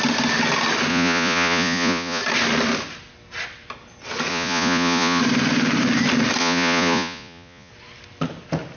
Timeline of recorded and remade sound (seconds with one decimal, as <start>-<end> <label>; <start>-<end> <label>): 0.0-0.9 recorded; 0.9-2.2 remade; 2.2-4.3 recorded; 4.3-5.2 remade; 5.2-6.4 recorded; 6.4-7.7 remade; 7.7-8.8 recorded